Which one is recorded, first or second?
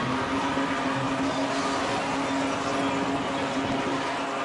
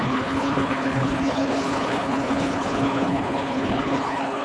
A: first